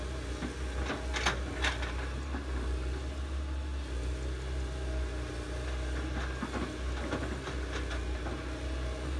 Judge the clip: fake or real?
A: real